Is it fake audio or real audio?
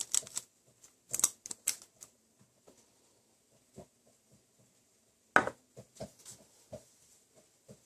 real